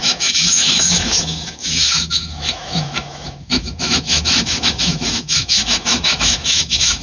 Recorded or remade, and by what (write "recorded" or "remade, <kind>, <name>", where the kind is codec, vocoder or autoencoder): remade, autoencoder, DAC-VAE